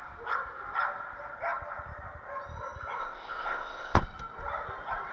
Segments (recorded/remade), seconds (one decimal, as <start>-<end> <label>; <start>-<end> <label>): 0.0-3.0 recorded; 3.0-4.0 remade; 4.0-5.1 recorded